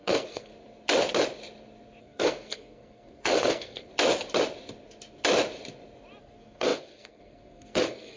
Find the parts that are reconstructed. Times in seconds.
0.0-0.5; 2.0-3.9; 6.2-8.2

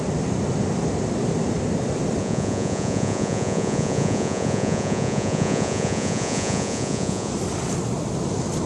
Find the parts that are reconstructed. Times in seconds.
2.2-7.3

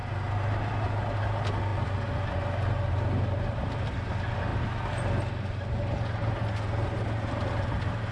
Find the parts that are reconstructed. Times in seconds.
none

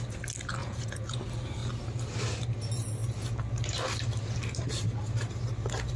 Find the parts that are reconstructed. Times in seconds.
0.6-1.2

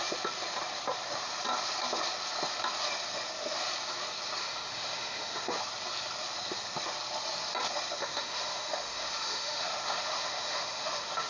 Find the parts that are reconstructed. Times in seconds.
4.4-5.6; 8.0-11.3

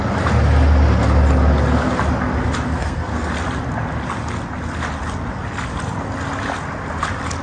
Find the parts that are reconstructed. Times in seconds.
2.7-3.3

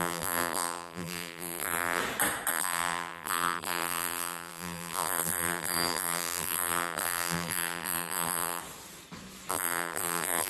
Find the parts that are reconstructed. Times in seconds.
0.0-2.0; 2.5-8.6; 9.5-10.5

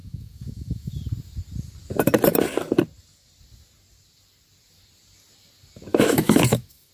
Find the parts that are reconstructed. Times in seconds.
0.0-0.9; 5.9-6.9